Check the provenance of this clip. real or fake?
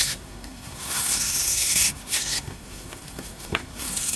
fake